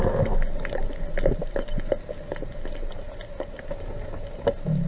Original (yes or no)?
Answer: yes